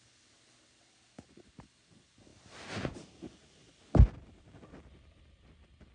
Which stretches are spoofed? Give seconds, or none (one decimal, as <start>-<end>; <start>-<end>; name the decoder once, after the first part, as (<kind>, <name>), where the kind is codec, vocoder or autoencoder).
2.3-3.1 (vocoder, BigVGAN v2); 3.6-4.5